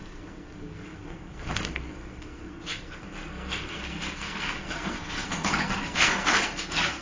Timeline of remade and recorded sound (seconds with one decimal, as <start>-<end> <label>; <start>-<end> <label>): 0.0-7.0 remade